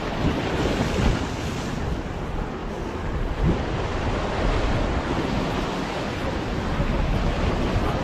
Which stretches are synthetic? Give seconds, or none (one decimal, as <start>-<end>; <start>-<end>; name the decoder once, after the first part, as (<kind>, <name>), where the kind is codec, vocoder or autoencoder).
3.9-4.6 (vocoder, BigVGAN v2)